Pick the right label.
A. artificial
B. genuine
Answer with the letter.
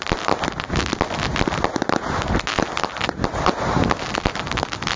B